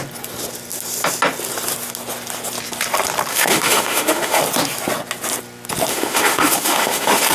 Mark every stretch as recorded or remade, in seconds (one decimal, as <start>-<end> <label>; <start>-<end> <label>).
0.0-3.3 recorded; 3.3-4.4 remade; 4.4-5.9 recorded; 5.9-7.3 remade